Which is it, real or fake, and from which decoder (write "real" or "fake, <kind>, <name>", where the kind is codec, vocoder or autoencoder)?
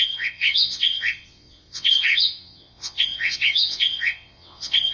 fake, vocoder, WaveNeXt